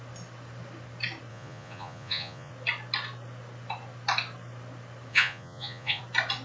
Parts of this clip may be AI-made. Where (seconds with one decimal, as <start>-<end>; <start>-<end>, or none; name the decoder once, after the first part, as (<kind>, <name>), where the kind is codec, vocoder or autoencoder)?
1.3-2.5 (vocoder, Vocos); 5.1-6.0